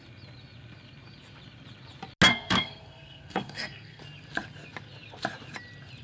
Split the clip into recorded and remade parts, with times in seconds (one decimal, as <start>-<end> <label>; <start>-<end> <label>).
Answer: 0.0-2.3 recorded; 2.3-4.0 remade; 4.0-6.0 recorded